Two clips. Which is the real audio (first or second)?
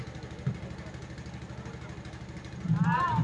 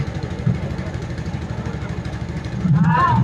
first